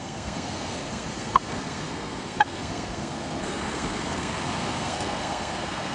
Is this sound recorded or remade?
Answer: remade